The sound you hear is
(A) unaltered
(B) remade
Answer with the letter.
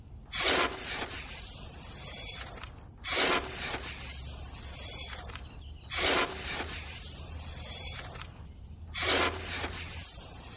A